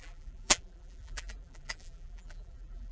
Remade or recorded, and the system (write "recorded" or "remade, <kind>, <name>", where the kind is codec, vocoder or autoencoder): remade, vocoder, BigVGAN v2